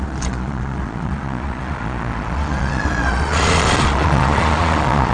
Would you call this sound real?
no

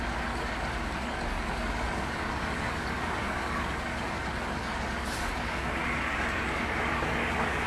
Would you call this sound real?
no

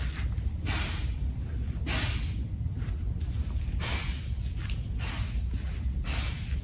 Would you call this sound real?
yes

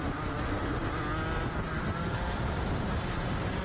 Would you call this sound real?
yes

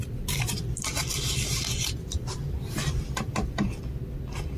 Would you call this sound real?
yes